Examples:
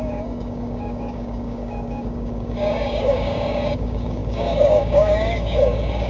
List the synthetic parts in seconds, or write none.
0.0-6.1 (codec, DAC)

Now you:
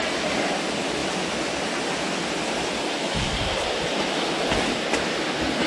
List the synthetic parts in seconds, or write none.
none